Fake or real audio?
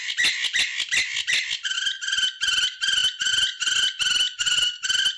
real